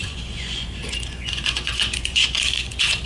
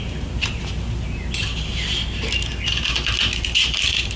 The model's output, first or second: first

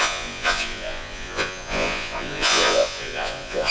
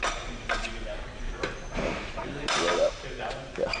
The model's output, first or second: first